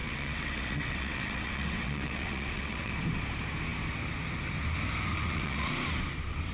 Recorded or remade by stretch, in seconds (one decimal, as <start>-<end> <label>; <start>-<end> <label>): 0.0-2.9 remade; 2.9-5.1 recorded; 5.1-5.7 remade; 5.7-6.5 recorded

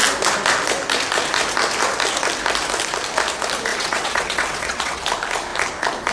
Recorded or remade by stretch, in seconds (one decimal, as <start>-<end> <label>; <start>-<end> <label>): 0.0-3.7 recorded; 3.7-5.0 remade; 5.0-6.1 recorded

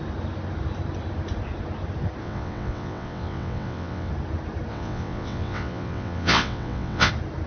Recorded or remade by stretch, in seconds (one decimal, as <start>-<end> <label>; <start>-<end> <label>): 0.0-2.2 recorded; 2.2-4.1 remade; 4.1-4.7 recorded; 4.7-7.1 remade; 7.1-7.5 recorded

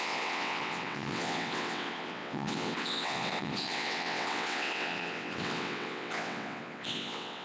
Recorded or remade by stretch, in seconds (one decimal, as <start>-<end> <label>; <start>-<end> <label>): 0.0-7.4 remade

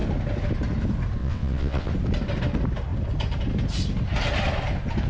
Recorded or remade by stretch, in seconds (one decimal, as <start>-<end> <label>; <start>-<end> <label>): 0.0-1.2 recorded; 1.2-1.9 remade; 1.9-5.1 recorded

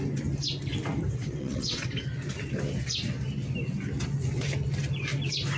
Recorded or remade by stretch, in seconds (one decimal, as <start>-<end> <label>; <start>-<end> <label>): 0.0-1.2 recorded; 1.2-1.9 remade; 1.9-5.6 recorded